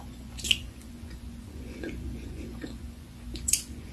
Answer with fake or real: fake